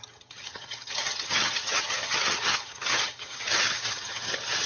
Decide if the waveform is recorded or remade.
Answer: remade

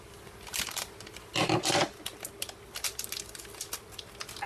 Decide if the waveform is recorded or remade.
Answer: recorded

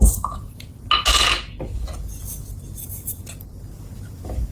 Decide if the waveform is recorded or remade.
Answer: recorded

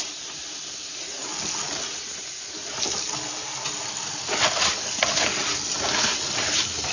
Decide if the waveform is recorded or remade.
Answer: recorded